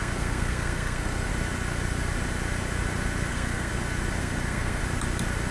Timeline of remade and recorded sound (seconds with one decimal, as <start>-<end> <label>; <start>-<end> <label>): 0.0-1.3 remade; 1.3-3.3 recorded; 3.3-3.7 remade; 3.7-4.2 recorded; 4.2-4.8 remade; 4.8-5.5 recorded